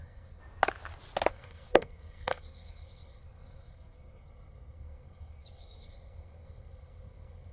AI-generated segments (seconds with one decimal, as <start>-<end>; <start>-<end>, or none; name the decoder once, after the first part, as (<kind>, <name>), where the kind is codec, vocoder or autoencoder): 0.0-0.4 (codec, SNAC); 1.3-7.5